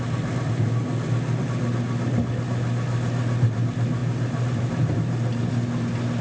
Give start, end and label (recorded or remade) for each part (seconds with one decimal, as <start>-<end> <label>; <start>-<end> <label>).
0.0-4.0 recorded; 4.0-5.5 remade; 5.5-6.2 recorded